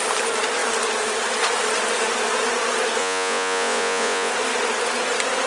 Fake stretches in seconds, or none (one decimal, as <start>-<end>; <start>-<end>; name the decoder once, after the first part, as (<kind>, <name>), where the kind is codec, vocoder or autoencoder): 3.0-4.3 (vocoder, Vocos)